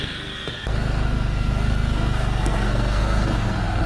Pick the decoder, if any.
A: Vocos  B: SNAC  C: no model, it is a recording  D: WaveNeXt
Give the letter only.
B